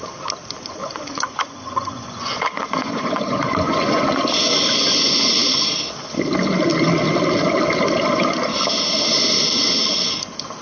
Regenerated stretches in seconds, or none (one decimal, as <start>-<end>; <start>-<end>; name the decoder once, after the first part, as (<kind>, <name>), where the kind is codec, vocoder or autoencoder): 0.8-4.2 (vocoder, Vocos)